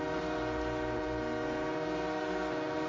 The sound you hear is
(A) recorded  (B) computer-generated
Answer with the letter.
A